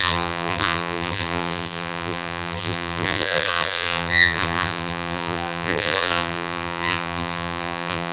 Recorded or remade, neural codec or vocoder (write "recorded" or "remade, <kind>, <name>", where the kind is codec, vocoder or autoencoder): remade, vocoder, BigVGAN v2